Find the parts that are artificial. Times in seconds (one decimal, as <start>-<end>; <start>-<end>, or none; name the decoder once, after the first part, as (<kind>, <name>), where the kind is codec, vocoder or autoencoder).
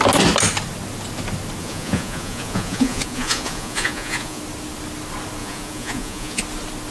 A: 1.6-4.4 (vocoder, Vocos); 5.4-6.4